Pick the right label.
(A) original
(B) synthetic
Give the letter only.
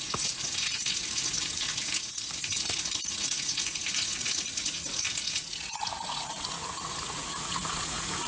B